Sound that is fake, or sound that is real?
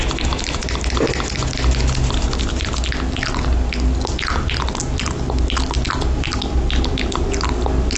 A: real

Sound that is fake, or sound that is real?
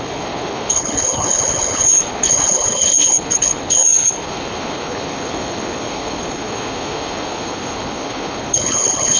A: fake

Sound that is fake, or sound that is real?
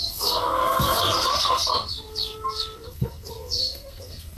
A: fake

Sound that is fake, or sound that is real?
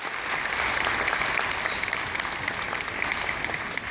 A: real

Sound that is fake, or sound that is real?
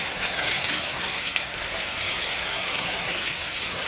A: fake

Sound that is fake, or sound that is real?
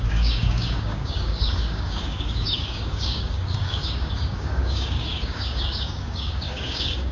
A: fake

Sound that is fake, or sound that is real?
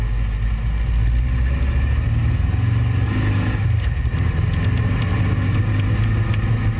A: real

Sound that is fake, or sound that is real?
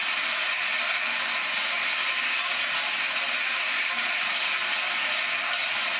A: real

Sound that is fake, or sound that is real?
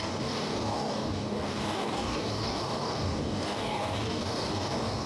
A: fake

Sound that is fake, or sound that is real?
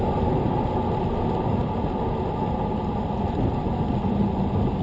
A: real